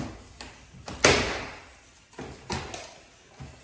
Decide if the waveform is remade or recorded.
recorded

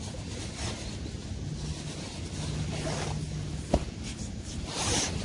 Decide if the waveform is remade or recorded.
recorded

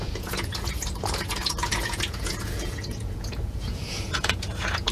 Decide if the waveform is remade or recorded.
remade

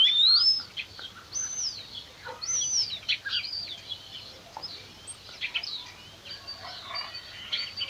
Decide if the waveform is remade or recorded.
recorded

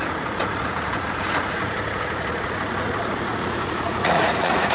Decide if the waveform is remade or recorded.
remade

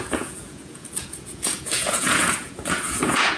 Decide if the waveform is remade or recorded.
remade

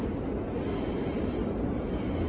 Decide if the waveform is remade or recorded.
recorded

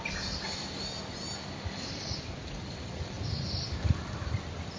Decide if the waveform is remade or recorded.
recorded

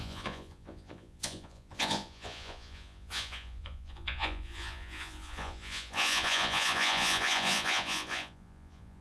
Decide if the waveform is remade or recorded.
remade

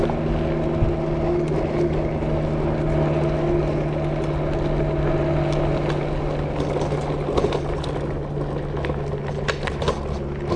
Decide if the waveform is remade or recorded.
recorded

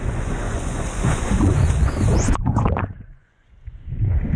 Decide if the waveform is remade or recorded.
remade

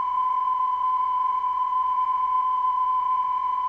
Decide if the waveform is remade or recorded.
remade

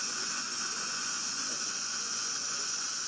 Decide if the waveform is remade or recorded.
remade